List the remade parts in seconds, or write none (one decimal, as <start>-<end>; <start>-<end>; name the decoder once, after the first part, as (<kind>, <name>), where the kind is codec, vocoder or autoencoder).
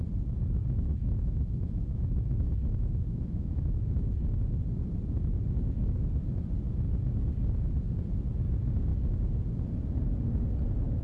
0.9-3.9 (autoencoder, DAC-VAE)